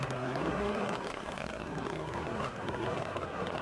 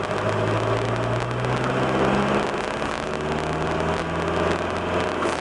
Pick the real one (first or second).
second